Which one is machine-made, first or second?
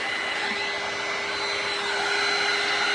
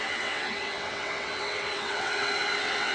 second